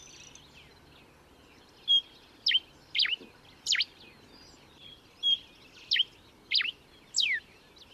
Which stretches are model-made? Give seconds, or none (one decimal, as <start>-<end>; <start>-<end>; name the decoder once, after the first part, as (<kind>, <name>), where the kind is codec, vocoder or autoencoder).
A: none